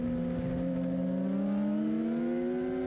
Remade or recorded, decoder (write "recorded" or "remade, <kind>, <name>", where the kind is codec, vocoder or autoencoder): recorded